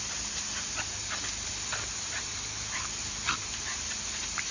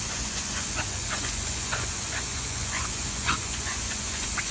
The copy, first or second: second